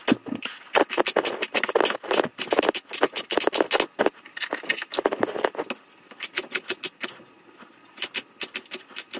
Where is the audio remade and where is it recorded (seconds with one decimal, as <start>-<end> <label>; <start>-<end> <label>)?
0.0-9.2 recorded